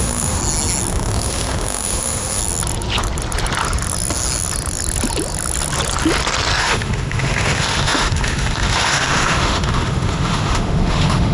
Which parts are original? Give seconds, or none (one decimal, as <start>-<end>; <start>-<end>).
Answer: 0.4-0.9; 2.4-6.6